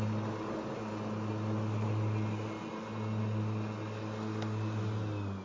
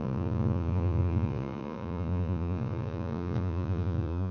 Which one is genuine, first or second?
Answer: first